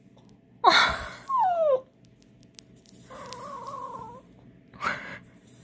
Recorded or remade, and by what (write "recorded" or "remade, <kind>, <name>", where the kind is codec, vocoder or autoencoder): recorded